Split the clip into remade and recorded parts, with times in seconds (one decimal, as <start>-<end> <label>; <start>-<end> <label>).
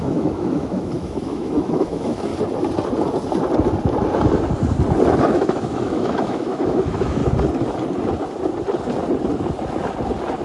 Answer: 0.0-2.3 remade; 2.3-5.2 recorded; 5.2-7.2 remade; 7.2-10.4 recorded